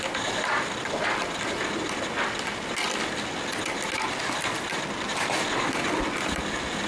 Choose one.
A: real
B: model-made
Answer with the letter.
A